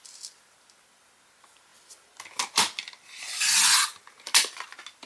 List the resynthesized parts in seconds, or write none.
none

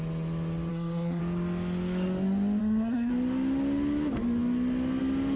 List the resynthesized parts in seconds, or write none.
0.7-1.2 (codec, SNAC); 2.6-3.1

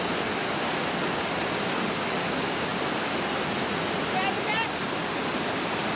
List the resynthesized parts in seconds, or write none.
none

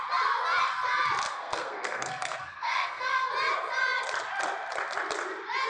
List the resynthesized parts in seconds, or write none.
1.3-3.3 (codec, SNAC)

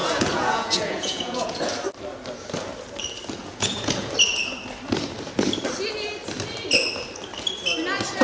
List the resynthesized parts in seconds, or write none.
0.0-1.6 (vocoder, Vocos); 3.4-4.1

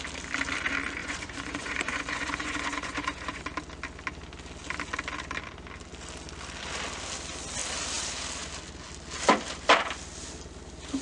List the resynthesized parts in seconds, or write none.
1.0-3.4 (vocoder, Vocos)